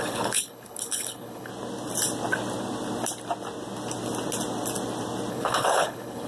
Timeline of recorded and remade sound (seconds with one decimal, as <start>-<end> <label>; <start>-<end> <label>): 0.0-1.5 remade; 1.5-5.3 recorded; 5.3-6.3 remade